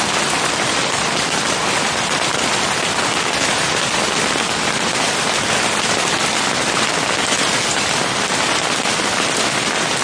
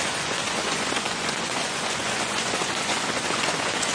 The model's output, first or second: second